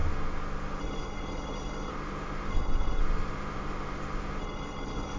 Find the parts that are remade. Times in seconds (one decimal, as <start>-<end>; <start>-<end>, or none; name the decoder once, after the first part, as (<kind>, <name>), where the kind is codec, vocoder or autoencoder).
0.8-1.9 (codec, HILCodec); 2.5-3.0; 4.4-5.2